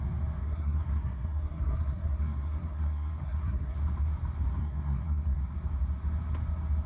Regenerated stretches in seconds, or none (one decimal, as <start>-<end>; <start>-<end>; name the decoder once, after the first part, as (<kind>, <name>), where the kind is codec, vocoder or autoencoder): 0.4-3.8 (codec, SNAC); 4.6-5.4